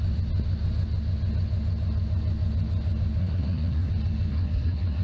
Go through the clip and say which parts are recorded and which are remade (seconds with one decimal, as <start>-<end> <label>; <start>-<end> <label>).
0.0-3.2 recorded; 3.2-3.9 remade; 3.9-4.3 recorded; 4.3-5.0 remade